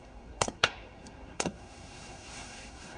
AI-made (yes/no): yes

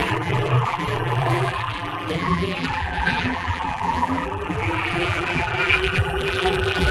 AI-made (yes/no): yes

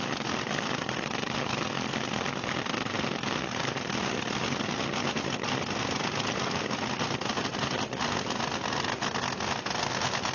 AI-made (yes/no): no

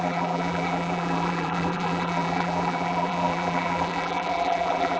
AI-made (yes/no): yes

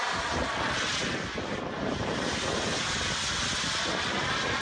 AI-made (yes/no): no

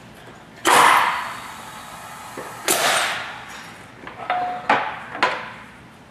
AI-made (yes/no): no